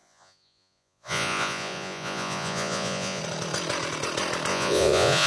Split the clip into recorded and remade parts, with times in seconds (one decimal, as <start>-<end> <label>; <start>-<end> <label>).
0.0-3.2 remade; 3.2-4.5 recorded; 4.5-5.3 remade